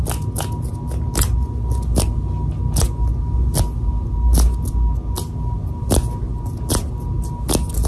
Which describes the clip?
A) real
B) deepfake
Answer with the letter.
A